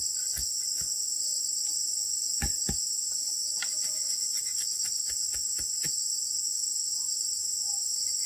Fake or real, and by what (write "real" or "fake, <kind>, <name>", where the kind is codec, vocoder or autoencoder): real